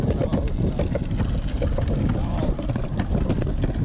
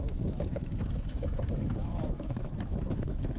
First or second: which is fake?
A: second